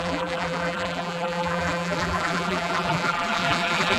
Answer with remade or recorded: remade